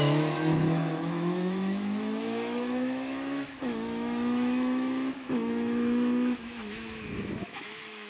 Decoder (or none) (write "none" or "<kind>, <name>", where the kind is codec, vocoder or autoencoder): autoencoder, DAC-VAE